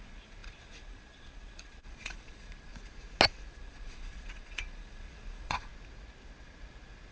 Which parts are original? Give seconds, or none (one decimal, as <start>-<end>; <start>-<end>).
2.7-3.5; 5.7-7.1